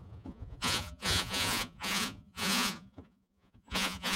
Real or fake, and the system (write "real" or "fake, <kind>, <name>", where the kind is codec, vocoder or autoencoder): fake, vocoder, Vocos